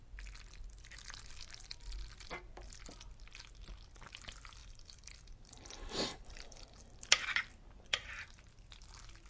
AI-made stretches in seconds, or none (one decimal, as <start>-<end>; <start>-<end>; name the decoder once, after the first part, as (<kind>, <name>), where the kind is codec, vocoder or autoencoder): 4.6-6.9 (vocoder, BigVGAN v2); 7.9-8.4